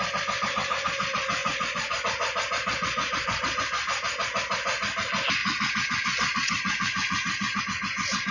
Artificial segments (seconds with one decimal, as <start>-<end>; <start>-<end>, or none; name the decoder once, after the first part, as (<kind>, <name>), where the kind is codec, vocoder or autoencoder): 1.4-2.0 (vocoder, Vocos); 2.7-3.6; 5.4-7.6